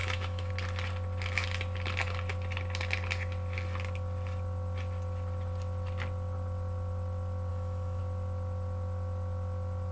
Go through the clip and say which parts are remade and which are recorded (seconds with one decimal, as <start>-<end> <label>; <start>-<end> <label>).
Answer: 0.0-0.5 remade; 0.5-7.5 recorded; 7.5-8.0 remade; 8.0-9.9 recorded